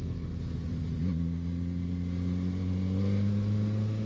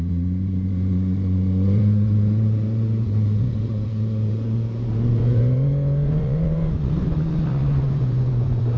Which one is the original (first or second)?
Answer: first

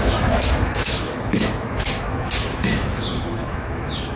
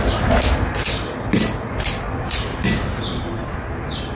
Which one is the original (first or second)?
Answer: second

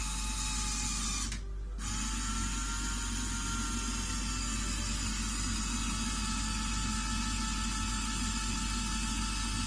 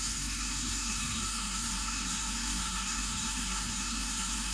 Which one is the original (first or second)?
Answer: first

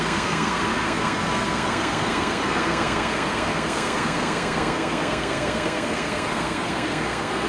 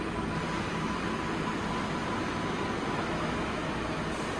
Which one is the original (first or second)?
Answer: second